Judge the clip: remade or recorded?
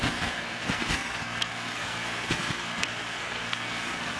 remade